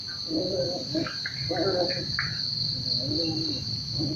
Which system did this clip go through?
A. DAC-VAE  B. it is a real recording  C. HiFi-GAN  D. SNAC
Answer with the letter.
B